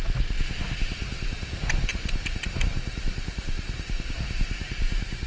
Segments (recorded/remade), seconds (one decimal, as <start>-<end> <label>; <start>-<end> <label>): 0.0-1.9 recorded; 1.9-5.3 remade